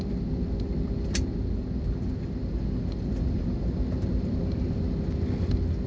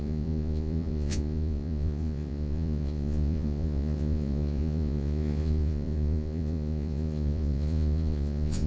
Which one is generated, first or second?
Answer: second